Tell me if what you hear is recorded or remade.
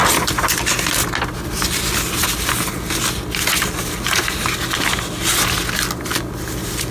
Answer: recorded